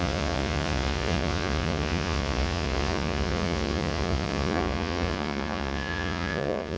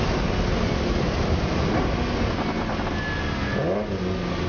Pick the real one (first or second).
second